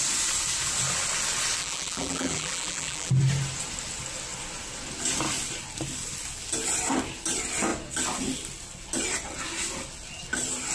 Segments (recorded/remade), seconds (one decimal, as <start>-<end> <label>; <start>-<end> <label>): 0.0-1.6 recorded; 1.6-3.1 remade; 3.1-10.7 recorded